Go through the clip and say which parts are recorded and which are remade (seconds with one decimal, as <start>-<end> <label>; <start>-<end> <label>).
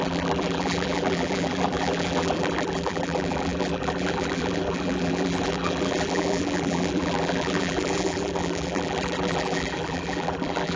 0.0-10.8 remade